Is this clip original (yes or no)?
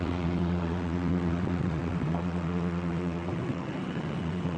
no